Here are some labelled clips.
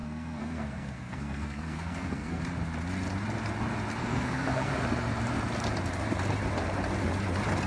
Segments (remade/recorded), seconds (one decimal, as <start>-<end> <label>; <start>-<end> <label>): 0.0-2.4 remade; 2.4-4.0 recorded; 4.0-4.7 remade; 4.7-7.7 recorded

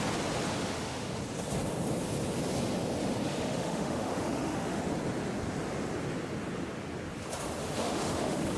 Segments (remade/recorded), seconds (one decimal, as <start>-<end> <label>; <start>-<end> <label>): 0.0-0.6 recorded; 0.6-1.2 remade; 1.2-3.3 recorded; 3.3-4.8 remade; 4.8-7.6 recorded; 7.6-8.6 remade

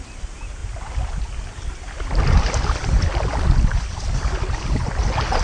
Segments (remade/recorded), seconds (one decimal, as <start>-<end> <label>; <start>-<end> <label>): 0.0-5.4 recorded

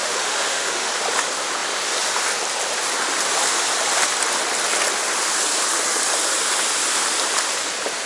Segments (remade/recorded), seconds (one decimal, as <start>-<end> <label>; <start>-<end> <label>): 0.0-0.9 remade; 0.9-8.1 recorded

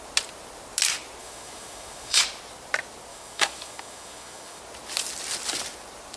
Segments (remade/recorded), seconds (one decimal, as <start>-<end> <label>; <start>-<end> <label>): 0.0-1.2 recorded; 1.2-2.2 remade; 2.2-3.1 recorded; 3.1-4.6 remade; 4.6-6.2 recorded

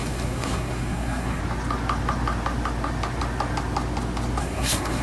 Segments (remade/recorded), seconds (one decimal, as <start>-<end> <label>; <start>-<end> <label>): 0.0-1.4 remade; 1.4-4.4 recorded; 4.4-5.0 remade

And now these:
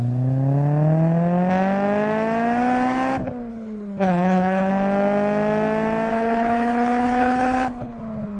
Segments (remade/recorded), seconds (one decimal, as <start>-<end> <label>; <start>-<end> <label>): 0.0-3.5 recorded; 3.5-4.7 remade; 4.7-6.1 recorded; 6.1-8.0 remade; 8.0-8.4 recorded

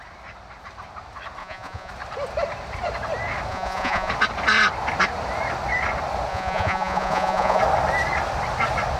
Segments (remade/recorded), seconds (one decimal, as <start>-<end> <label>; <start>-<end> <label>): 0.0-1.4 recorded; 1.4-1.9 remade; 1.9-3.5 recorded; 3.5-4.1 remade; 4.1-6.3 recorded; 6.3-7.6 remade; 7.6-9.0 recorded